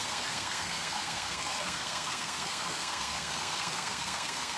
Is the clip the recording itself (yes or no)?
no